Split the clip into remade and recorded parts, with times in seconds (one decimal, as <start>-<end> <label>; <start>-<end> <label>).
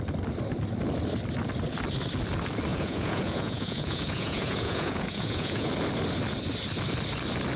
0.0-2.7 recorded; 2.7-5.7 remade; 5.7-7.6 recorded